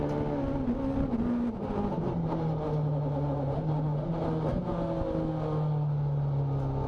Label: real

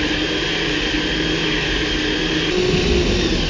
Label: real